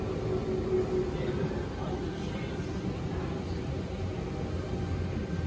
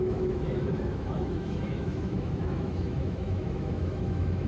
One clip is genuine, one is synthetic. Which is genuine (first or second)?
first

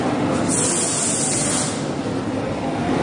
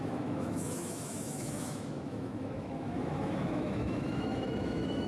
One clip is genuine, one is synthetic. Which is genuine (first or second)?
first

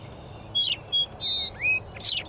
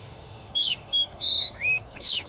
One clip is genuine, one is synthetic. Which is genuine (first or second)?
first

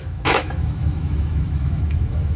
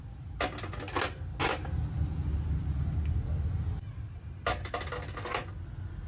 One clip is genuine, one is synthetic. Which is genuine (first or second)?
second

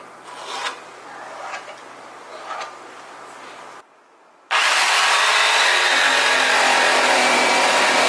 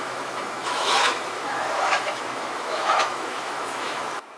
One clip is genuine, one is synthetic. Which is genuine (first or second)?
first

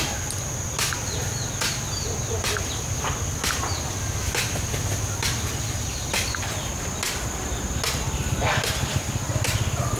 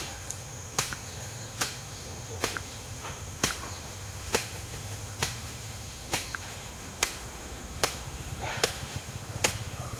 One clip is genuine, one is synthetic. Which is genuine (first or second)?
first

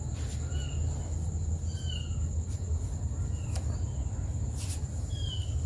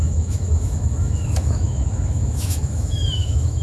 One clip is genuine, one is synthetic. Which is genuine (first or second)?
first